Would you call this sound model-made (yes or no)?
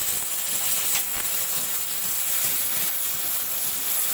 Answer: no